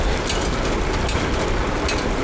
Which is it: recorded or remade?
recorded